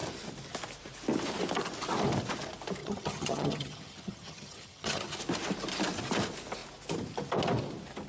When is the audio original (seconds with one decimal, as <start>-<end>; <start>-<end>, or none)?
0.0-2.8; 5.2-8.1